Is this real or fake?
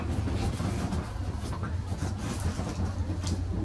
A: real